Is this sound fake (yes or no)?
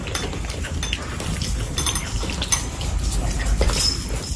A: no